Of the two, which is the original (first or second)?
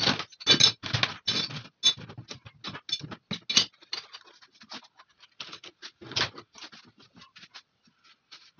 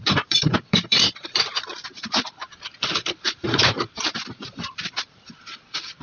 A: first